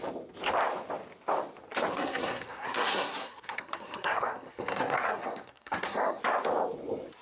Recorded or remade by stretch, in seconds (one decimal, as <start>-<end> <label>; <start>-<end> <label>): 0.0-1.9 recorded; 1.9-6.2 remade; 6.2-7.2 recorded